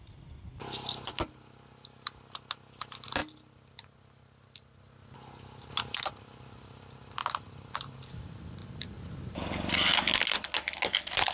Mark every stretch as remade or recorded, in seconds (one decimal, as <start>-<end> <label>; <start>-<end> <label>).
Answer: 0.0-11.3 recorded